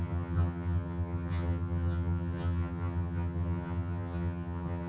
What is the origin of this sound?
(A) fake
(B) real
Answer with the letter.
A